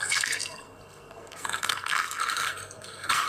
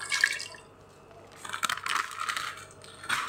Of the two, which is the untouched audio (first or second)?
second